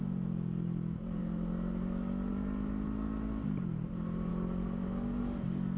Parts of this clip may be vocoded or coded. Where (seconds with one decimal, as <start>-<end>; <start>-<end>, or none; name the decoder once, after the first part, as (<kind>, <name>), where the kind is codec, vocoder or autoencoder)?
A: none